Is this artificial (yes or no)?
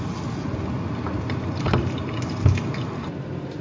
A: no